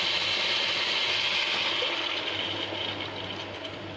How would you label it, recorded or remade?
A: recorded